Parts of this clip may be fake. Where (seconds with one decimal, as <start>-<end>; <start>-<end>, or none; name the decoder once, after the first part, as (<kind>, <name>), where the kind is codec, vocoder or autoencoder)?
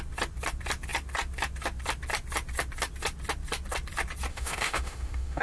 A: 4.3-5.4 (autoencoder, DAC-VAE)